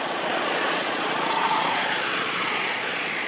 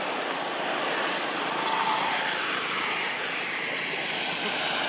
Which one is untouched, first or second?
second